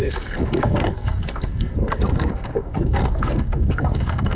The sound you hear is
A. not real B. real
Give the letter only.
A